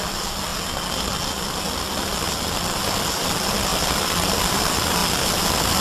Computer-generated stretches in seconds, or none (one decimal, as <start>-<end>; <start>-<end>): none